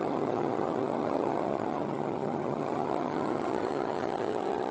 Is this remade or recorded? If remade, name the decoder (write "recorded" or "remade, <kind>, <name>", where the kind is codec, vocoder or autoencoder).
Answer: remade, vocoder, HiFi-GAN